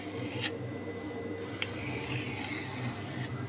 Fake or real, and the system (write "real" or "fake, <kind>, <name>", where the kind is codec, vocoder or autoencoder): real